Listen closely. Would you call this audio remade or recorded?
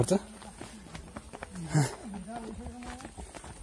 recorded